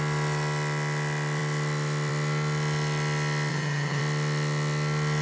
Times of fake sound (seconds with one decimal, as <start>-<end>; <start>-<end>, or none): 3.5-4.0